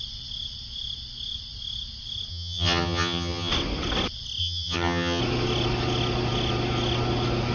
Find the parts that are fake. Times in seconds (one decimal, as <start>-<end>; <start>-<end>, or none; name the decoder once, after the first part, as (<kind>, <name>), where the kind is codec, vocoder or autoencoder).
2.3-3.5 (vocoder, HiFi-GAN); 4.4-5.2

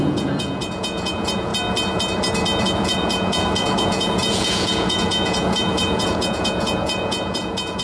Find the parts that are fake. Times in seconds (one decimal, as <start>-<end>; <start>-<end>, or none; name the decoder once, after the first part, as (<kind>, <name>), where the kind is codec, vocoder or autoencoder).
0.0-1.5 (vocoder, Vocos); 2.6-7.8

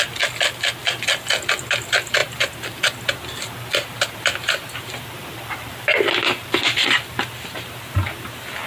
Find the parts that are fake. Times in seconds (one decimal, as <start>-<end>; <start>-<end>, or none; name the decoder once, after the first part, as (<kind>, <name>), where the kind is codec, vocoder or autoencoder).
none

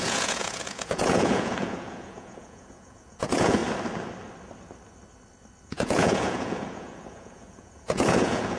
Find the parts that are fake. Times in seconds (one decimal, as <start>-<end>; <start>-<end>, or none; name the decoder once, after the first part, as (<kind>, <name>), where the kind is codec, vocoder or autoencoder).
0.0-3.6 (vocoder, Vocos); 5.6-8.6

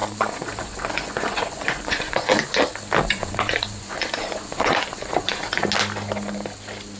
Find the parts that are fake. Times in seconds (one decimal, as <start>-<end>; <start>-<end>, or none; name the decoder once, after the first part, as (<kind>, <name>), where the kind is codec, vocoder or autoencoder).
0.0-2.3 (vocoder, Vocos); 3.1-5.6

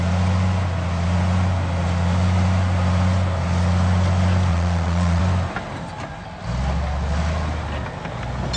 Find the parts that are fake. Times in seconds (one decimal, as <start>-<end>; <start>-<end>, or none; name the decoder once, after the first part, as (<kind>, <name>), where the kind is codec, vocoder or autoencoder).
4.5-5.2 (vocoder, Vocos)

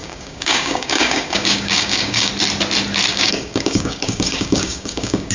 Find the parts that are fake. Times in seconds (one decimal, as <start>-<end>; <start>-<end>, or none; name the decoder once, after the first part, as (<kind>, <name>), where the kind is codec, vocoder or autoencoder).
0.0-2.3 (codec, DAC); 3.1-5.3